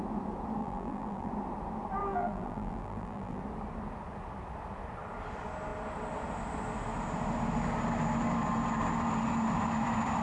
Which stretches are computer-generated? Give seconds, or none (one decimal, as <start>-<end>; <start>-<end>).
0.6-1.3; 2.0-3.4